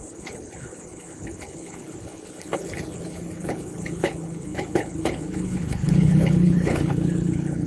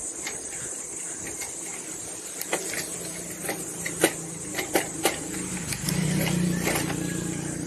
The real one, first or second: second